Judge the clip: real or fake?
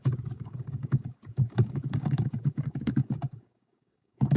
fake